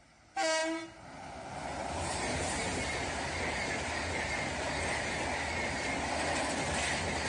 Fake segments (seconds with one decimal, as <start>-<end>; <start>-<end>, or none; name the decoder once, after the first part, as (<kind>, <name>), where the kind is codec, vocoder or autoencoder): none